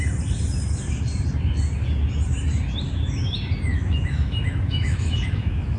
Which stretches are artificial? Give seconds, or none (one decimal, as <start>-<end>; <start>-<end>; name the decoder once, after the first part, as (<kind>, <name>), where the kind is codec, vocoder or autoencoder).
3.7-5.8 (autoencoder, DAC-VAE)